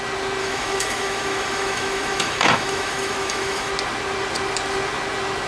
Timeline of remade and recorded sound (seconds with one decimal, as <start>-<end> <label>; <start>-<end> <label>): 0.0-0.4 recorded; 0.4-3.7 remade; 3.7-5.5 recorded